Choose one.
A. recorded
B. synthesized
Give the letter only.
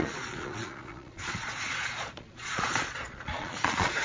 B